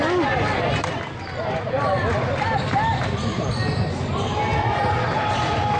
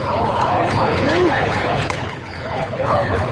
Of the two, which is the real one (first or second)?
first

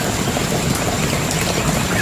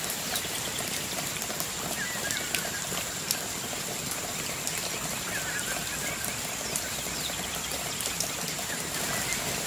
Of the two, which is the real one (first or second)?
first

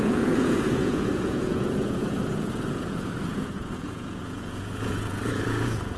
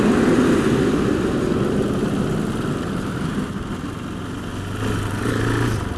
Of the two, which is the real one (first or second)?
second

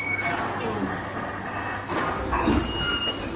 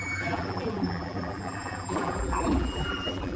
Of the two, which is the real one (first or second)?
first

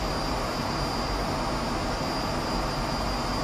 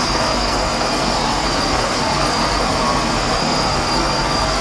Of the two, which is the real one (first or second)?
first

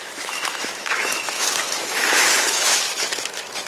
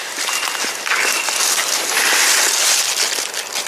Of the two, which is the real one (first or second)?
second